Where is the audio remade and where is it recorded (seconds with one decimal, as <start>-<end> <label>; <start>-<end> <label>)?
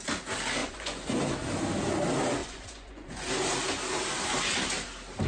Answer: 0.0-0.6 recorded; 0.6-1.2 remade; 1.2-2.4 recorded; 2.4-3.3 remade; 3.3-5.3 recorded